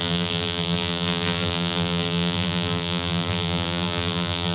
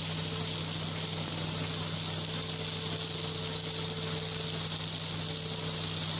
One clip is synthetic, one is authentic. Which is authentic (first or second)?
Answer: second